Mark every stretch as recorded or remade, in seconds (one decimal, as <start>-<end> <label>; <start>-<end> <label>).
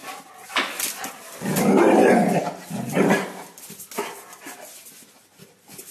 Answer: 0.0-5.9 recorded